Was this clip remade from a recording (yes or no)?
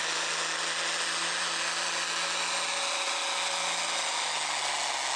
no